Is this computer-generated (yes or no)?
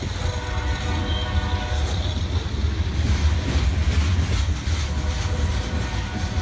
no